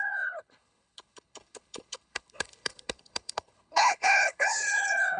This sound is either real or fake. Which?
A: fake